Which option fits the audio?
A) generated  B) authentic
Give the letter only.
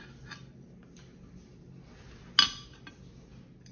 B